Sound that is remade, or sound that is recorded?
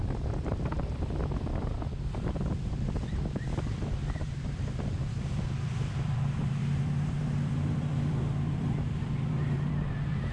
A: remade